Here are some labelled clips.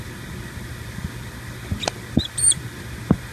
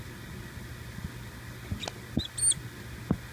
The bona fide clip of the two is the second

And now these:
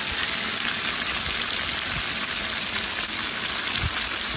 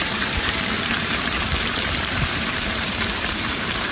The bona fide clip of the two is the first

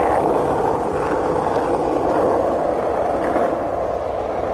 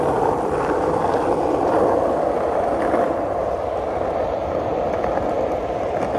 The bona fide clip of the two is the first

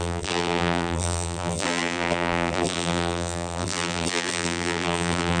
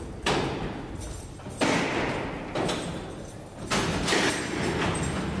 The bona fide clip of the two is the second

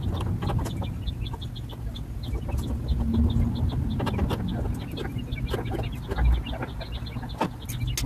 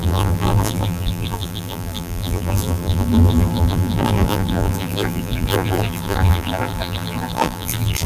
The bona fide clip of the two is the first